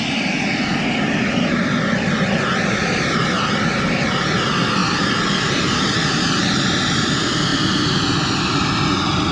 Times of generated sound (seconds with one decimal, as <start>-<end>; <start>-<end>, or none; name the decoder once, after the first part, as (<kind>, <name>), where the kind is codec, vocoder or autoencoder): none